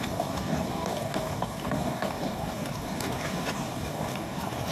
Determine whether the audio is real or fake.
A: fake